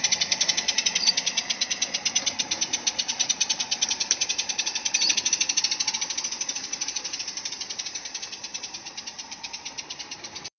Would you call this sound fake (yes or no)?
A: yes